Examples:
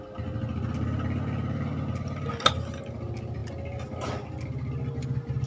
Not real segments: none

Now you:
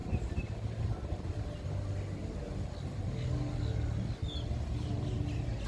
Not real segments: none